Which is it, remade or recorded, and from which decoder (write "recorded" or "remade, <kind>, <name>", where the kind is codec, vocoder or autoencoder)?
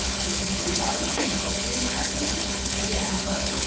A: remade, codec, HILCodec